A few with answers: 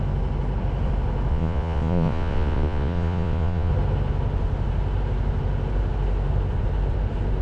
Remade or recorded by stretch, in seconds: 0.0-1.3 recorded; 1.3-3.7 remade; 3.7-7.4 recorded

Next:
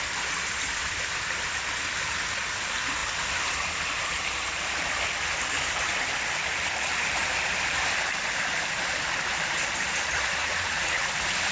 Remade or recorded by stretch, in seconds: 0.0-10.4 recorded; 10.4-11.1 remade; 11.1-11.5 recorded

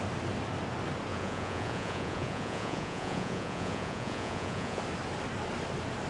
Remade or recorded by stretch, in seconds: 0.0-1.1 recorded; 1.1-4.8 remade; 4.8-6.1 recorded